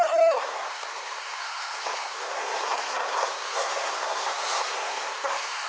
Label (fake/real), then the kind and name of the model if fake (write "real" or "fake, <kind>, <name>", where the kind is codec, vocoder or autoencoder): fake, codec, SNAC